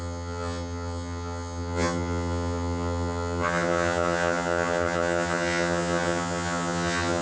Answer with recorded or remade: remade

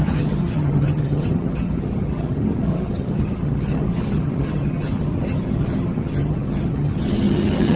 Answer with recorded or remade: remade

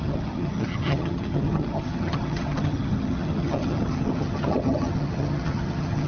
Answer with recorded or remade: remade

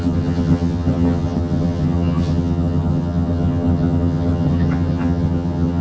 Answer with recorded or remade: remade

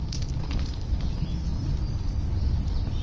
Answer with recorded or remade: recorded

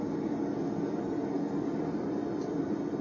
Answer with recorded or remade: recorded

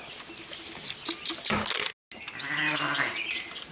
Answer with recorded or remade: recorded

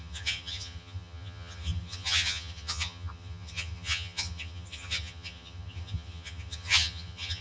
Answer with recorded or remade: remade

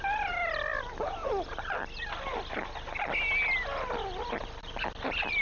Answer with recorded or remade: recorded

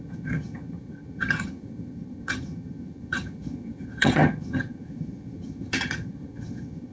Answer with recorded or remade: remade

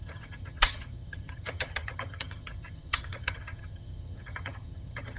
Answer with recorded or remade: remade